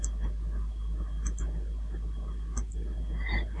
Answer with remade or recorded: recorded